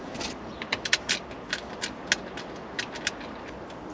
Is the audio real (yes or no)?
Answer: yes